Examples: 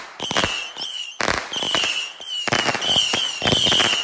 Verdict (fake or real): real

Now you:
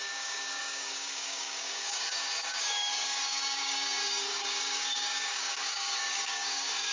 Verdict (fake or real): fake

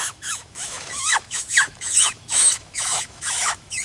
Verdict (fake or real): fake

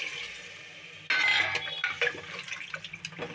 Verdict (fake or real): real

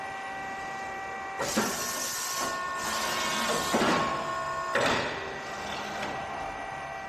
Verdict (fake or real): real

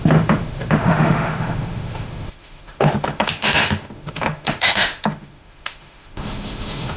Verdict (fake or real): fake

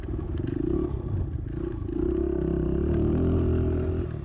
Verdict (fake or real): real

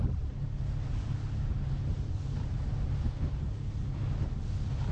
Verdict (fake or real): real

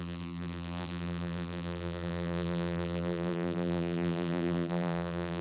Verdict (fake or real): fake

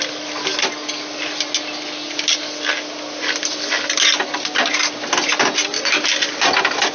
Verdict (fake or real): real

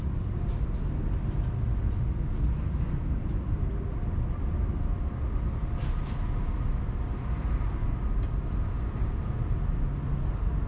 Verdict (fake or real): real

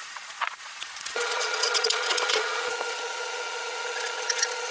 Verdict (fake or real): fake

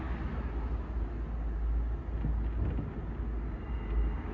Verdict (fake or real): real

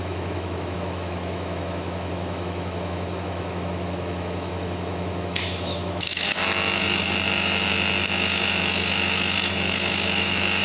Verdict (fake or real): fake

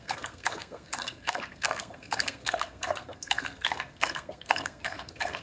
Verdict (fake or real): fake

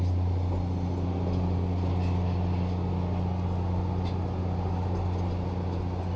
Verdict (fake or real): real